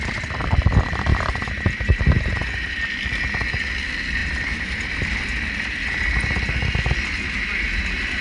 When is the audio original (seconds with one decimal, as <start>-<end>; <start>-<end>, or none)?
0.0-1.1; 2.8-4.2; 5.0-8.2